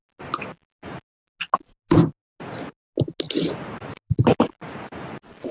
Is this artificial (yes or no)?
no